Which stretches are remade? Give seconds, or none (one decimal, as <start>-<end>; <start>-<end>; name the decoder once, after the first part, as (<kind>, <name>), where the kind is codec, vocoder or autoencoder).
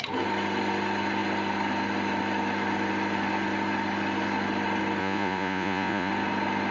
5.0-6.1 (vocoder, Vocos)